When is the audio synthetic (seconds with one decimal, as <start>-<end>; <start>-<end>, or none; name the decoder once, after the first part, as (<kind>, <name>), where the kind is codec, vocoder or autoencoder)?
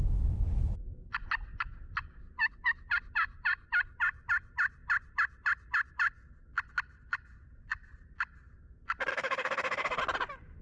9.1-10.0 (autoencoder, DAC-VAE)